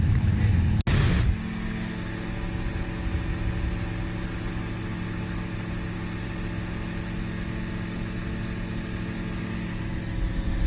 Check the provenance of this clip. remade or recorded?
recorded